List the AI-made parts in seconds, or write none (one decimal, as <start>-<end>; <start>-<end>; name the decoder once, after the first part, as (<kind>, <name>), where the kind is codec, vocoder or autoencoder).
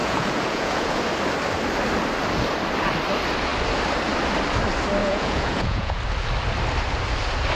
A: 0.0-1.0 (vocoder, Vocos); 5.0-6.0